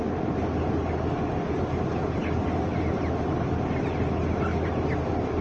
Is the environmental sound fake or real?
real